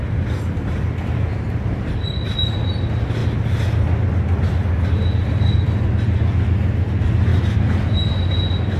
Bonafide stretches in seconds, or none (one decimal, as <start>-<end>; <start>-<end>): 0.0-1.3; 1.9-7.3; 8.1-8.8